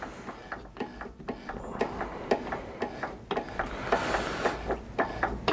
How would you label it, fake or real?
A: real